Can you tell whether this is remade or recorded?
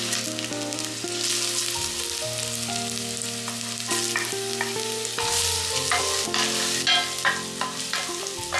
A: recorded